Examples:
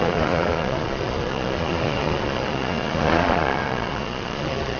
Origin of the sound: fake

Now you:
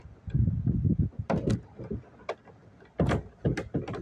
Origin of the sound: real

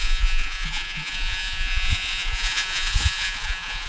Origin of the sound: fake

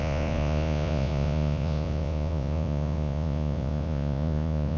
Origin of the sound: fake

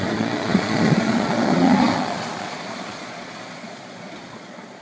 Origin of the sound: fake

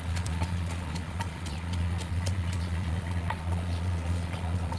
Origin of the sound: fake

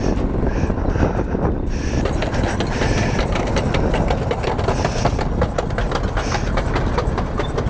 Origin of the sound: real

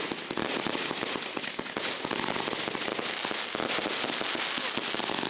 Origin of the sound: real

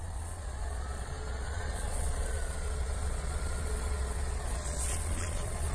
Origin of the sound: fake